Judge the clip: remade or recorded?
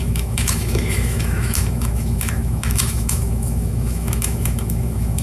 remade